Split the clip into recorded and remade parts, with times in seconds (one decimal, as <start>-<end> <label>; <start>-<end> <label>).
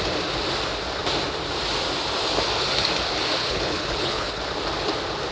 0.0-3.4 recorded; 3.4-4.4 remade; 4.4-5.3 recorded